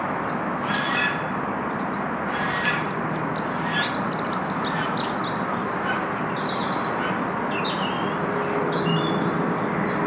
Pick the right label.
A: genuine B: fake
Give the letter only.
A